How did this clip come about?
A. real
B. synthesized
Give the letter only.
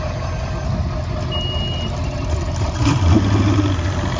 A